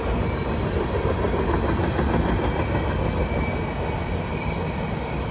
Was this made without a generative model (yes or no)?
yes